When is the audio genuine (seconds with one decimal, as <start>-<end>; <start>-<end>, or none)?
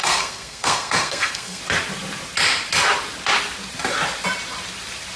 1.6-5.2